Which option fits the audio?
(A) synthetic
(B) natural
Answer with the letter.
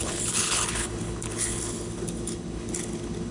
A